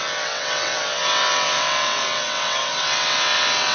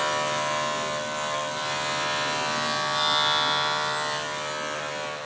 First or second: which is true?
second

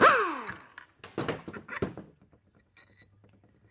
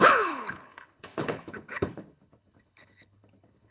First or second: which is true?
first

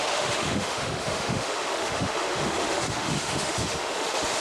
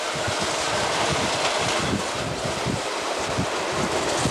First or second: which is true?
second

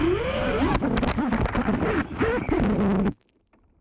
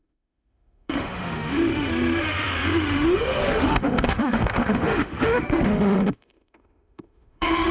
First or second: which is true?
first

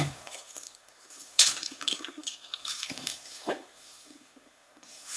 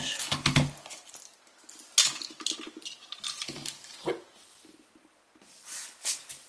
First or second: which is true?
second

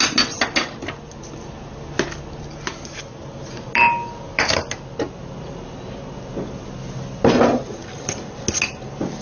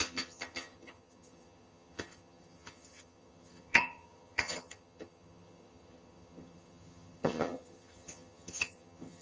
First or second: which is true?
first